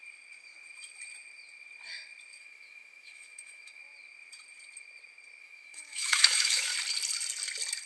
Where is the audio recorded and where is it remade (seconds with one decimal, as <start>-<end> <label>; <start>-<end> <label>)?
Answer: 0.0-2.4 recorded; 2.4-3.8 remade; 3.8-5.4 recorded; 5.4-6.7 remade; 6.7-7.9 recorded